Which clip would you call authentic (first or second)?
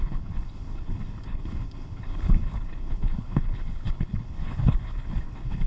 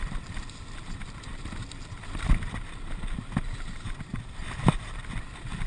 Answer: second